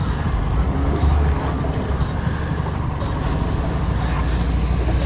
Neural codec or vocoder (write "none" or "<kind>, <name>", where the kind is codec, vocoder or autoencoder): none